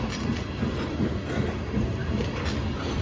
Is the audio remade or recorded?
recorded